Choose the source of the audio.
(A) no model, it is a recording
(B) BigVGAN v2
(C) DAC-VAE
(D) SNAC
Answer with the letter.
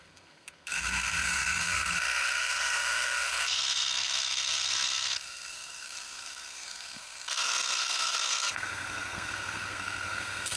D